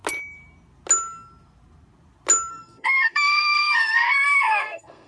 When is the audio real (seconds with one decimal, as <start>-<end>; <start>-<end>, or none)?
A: 0.0-2.5